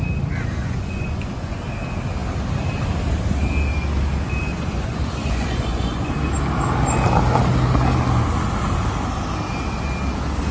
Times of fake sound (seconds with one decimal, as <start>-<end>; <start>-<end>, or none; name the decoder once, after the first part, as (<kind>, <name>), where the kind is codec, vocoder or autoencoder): 0.6-1.6 (vocoder, Vocos); 4.5-6.1